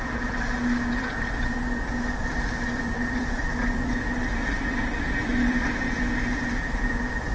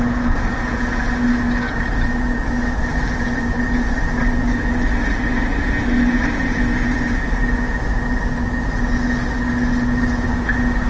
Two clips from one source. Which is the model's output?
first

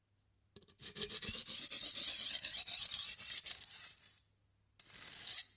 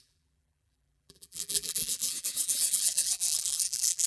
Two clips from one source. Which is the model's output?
second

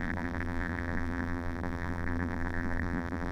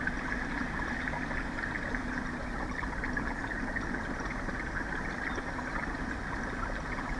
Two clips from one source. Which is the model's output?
first